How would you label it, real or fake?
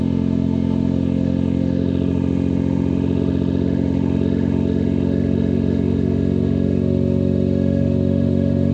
fake